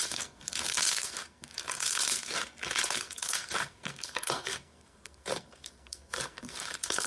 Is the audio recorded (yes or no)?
no